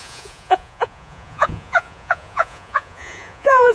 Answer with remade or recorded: remade